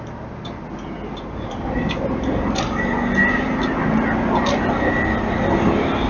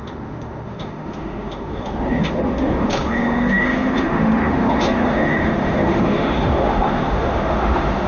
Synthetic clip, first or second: second